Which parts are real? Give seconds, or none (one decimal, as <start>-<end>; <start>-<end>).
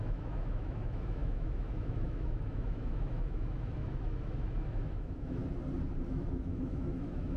5.4-6.1